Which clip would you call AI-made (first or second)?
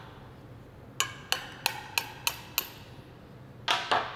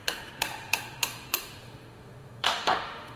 second